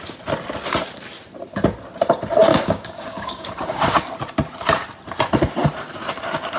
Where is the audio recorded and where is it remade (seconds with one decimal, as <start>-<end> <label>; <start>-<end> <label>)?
0.0-2.5 recorded; 2.5-3.8 remade; 3.8-6.6 recorded